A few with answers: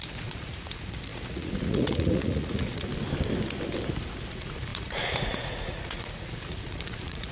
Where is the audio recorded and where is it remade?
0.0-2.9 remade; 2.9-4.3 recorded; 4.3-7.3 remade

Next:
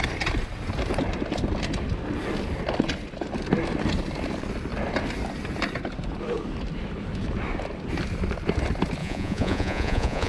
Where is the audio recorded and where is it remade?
0.0-9.0 recorded; 9.0-10.3 remade

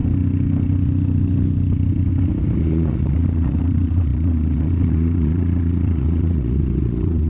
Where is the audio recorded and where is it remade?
0.0-2.6 recorded; 2.6-7.3 remade

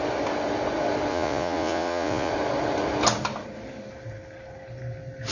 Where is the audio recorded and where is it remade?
0.0-1.1 recorded; 1.1-2.3 remade; 2.3-5.3 recorded

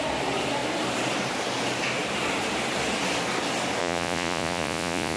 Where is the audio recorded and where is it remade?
0.0-3.8 recorded; 3.8-5.2 remade

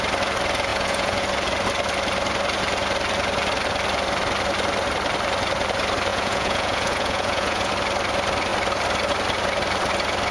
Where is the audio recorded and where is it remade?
0.0-0.7 recorded; 0.7-1.2 remade; 1.2-6.1 recorded; 6.1-7.7 remade; 7.7-10.3 recorded

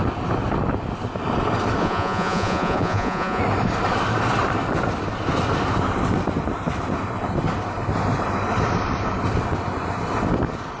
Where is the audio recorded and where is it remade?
0.0-1.8 recorded; 1.8-3.4 remade; 3.4-10.8 recorded